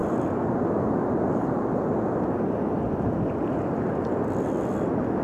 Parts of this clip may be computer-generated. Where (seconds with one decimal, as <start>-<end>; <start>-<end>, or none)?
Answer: none